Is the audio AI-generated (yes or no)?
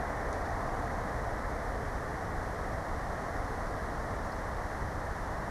no